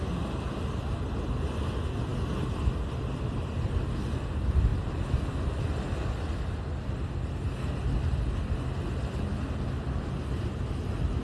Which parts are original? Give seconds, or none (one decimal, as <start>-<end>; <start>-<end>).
0.0-4.7; 5.6-11.2